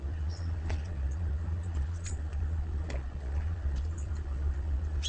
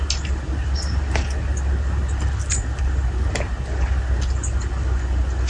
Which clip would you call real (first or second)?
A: second